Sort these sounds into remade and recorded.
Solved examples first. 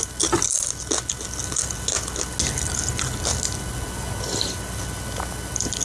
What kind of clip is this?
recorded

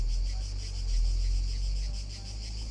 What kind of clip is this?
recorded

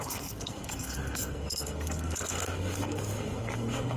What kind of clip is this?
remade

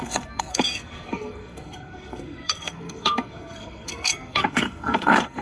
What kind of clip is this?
remade